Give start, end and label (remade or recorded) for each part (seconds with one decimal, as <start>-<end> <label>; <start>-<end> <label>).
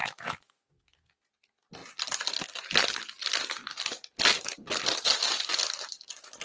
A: 0.0-1.2 remade; 1.2-6.4 recorded